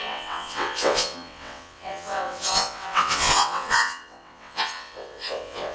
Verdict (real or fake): fake